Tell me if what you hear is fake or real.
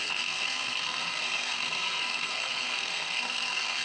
fake